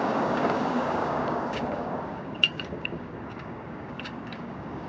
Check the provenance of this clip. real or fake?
fake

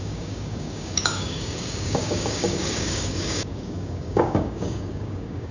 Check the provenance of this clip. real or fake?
fake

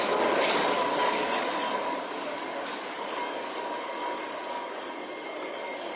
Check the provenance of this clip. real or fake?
fake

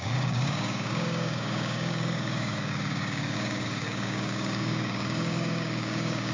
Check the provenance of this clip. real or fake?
fake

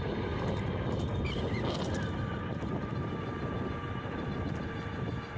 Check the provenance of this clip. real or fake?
real